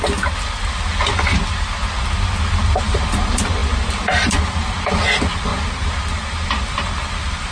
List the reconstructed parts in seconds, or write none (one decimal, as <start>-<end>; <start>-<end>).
none

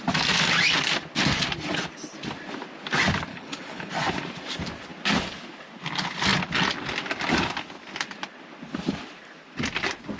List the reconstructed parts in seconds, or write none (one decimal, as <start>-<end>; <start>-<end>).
3.3-3.9

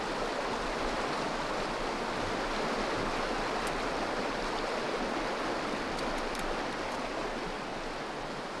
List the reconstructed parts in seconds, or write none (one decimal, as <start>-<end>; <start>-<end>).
none

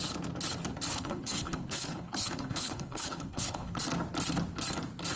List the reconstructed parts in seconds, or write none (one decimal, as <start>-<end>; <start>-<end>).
0.9-3.8

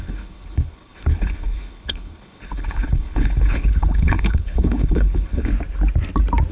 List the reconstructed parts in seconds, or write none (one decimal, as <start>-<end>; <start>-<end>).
0.0-5.5

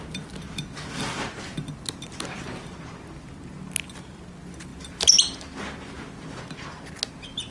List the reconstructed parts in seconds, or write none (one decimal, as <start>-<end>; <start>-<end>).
none

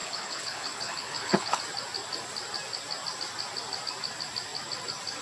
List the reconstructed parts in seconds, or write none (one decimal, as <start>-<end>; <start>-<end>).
0.0-1.6